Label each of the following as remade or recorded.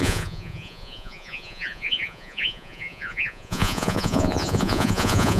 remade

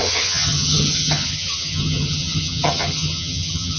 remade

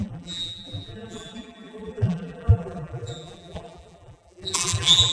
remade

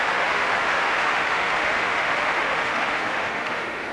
remade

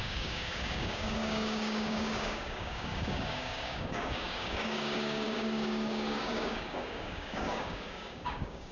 remade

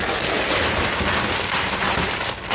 recorded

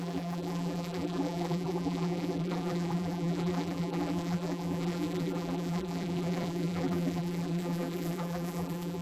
remade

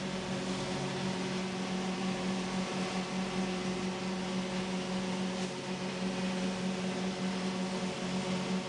recorded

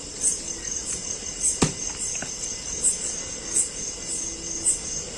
recorded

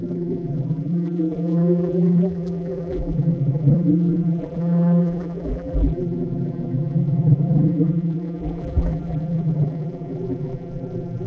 remade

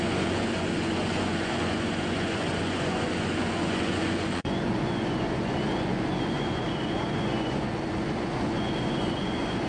remade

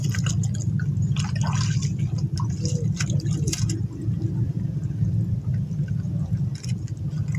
recorded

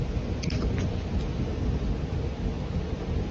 recorded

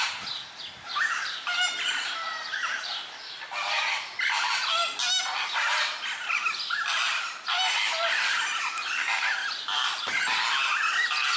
remade